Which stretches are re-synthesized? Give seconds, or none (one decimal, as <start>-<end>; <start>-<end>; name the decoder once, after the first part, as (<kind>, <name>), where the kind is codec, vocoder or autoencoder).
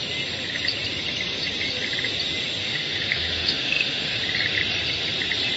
2.6-4.2 (autoencoder, DAC-VAE)